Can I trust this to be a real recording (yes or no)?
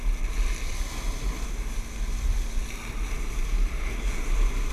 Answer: yes